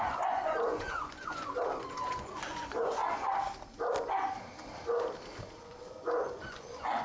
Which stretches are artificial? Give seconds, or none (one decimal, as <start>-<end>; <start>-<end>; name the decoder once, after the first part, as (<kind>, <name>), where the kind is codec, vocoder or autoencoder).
0.0-3.0 (vocoder, Vocos); 5.6-7.0